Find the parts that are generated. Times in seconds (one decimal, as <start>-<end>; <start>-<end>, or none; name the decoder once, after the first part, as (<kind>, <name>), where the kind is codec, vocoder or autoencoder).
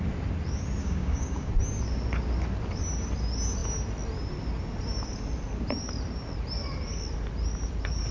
0.8-1.5 (codec, DAC)